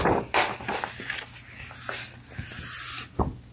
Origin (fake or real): real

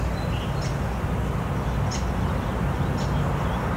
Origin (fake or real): real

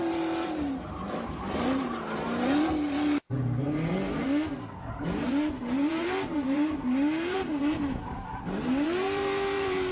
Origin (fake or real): fake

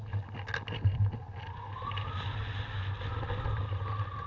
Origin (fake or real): real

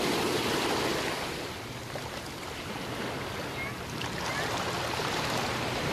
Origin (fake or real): real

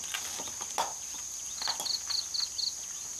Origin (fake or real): real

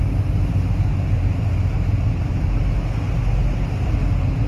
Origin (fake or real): real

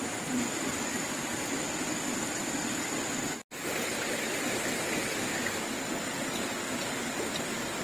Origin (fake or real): real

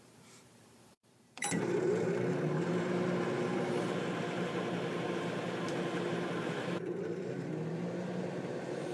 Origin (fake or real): fake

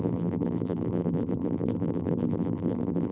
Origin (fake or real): fake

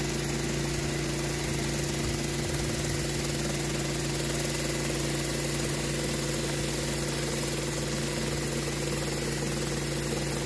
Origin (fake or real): real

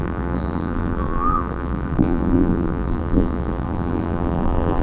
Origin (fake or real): fake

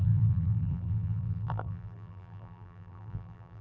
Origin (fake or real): fake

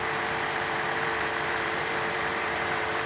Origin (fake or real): fake